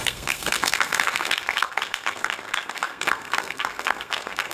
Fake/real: fake